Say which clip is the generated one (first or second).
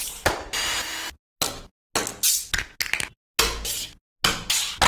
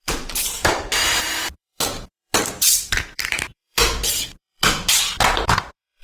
second